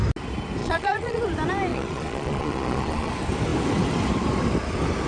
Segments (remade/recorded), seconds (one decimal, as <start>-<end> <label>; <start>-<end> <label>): 0.0-0.6 recorded; 0.6-1.2 remade; 1.2-1.7 recorded; 1.7-3.1 remade; 3.1-5.1 recorded